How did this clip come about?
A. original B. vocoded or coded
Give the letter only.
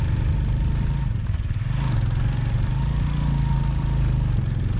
A